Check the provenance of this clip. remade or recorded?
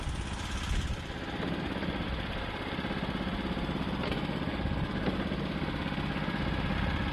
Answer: recorded